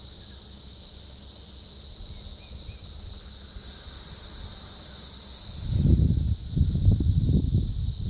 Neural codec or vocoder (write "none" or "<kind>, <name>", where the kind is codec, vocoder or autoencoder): none